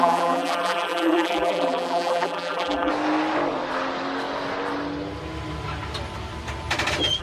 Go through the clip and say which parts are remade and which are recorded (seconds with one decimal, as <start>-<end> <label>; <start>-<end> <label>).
0.0-2.9 remade; 2.9-7.2 recorded